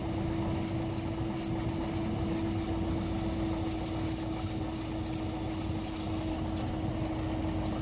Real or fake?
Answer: real